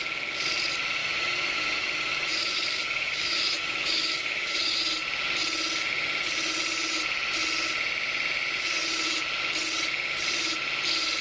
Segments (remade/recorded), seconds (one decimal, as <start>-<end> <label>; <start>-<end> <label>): 0.0-1.0 recorded; 1.0-4.7 remade; 4.7-11.2 recorded